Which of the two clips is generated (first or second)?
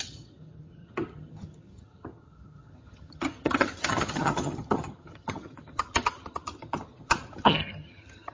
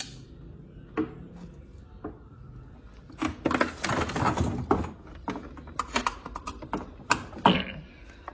first